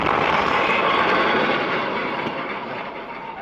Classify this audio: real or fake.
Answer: fake